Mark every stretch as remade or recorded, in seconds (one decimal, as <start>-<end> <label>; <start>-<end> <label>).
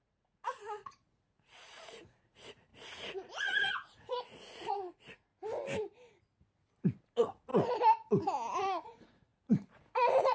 0.0-5.3 remade; 5.3-7.0 recorded; 7.0-7.5 remade; 7.5-8.6 recorded; 8.6-10.3 remade